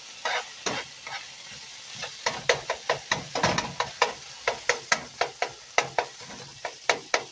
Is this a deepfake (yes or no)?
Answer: no